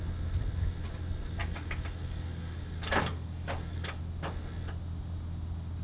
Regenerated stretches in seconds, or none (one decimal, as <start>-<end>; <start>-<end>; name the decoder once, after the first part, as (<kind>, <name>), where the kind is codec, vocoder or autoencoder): 1.4-4.0 (codec, DAC)